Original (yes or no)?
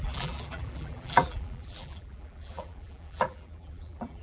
no